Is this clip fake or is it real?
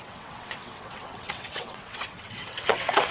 fake